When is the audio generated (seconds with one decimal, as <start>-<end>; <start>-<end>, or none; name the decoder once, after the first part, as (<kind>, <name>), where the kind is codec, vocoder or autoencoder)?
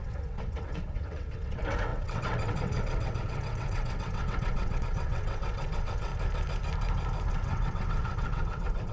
0.0-6.1 (vocoder, WaveNeXt); 7.3-8.9